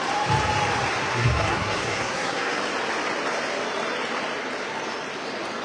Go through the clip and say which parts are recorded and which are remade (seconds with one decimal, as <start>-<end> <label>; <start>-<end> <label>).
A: 0.0-1.0 recorded; 1.0-2.6 remade; 2.6-5.6 recorded